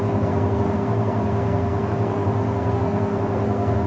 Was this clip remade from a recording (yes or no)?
yes